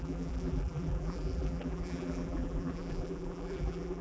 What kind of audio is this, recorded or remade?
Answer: remade